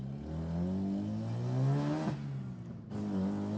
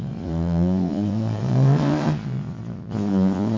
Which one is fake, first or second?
second